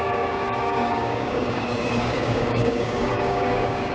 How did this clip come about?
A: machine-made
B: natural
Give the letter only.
A